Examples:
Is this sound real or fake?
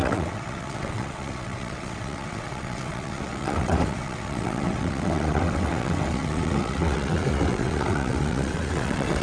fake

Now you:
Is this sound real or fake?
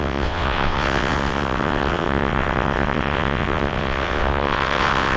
fake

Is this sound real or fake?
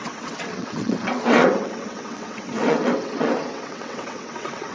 fake